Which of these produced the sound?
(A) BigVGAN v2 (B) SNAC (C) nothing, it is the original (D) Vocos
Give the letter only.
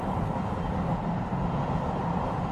C